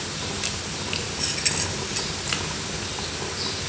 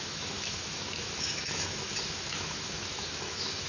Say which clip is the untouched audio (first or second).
first